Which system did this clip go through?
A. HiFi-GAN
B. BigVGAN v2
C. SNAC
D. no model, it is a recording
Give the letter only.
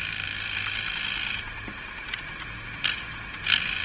D